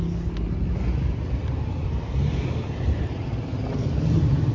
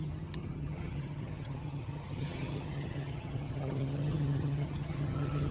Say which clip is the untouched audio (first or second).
first